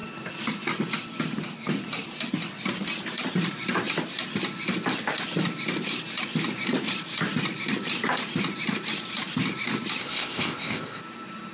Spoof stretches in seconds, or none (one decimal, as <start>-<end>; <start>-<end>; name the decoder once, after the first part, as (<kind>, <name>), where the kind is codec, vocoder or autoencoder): 10.0-11.0 (codec, ZipCodec)